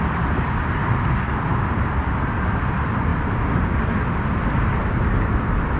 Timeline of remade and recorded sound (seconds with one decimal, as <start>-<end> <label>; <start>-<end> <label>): 0.0-5.8 recorded